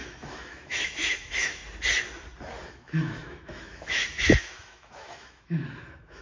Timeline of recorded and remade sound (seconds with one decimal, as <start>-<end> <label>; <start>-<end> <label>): 0.0-1.6 remade; 1.6-2.7 recorded; 2.7-6.2 remade